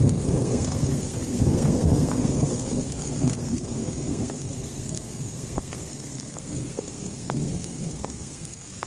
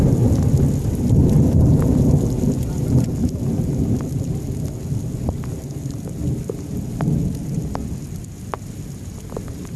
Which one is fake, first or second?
first